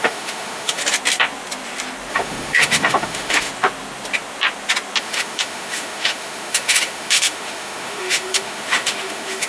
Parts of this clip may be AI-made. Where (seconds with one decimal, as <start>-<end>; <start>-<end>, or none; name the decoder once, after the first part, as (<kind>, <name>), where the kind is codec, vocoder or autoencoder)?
0.0-0.8 (autoencoder, DAC-VAE); 2.1-3.5; 5.0-9.5